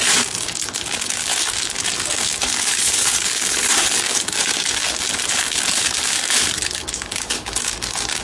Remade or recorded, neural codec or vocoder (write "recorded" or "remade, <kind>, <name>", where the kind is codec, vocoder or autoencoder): remade, codec, DAC